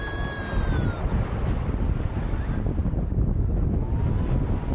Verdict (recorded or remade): recorded